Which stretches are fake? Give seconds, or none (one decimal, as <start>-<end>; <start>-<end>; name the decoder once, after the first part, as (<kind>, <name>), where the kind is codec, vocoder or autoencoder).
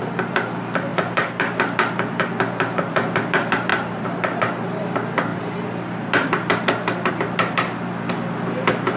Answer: 3.7-4.4 (vocoder, BigVGAN v2)